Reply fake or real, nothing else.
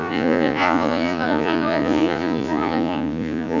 fake